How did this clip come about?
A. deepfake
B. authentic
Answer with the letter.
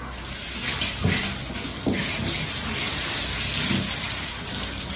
B